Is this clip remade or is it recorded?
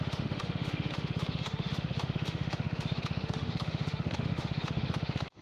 remade